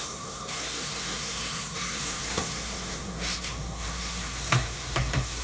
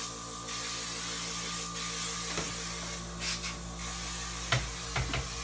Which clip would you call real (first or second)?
second